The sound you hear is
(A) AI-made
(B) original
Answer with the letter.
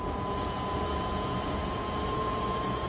A